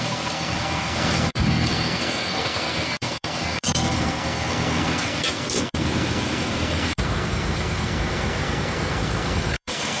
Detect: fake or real fake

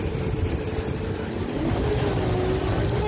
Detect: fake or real real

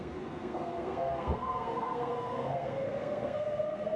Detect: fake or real fake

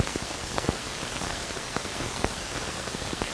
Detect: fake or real fake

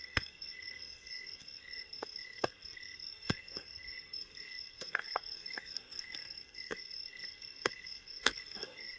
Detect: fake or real fake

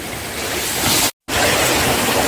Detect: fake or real real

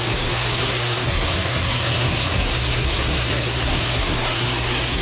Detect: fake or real fake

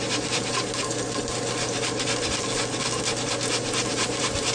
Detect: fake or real real